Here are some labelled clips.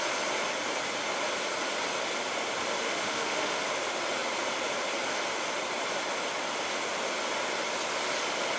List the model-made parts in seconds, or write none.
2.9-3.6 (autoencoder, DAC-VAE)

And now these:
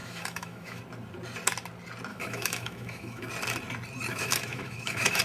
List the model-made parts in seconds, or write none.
0.0-0.8 (autoencoder, DAC-VAE); 2.1-3.3; 4.1-5.2

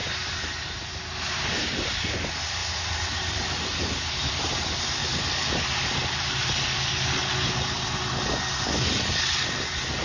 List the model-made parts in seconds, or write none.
none

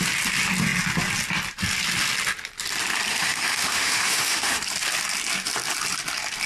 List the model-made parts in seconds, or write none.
3.1-4.6 (autoencoder, DAC-VAE)

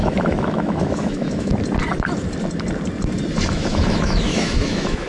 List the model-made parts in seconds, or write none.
0.0-1.5 (autoencoder, DAC-VAE); 3.5-5.1